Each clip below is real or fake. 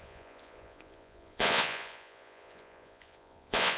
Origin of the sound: fake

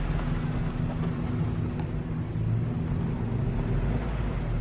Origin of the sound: real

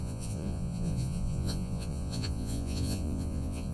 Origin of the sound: fake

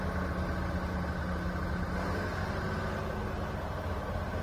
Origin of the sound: real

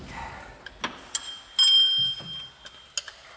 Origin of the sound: real